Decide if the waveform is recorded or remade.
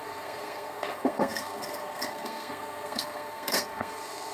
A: remade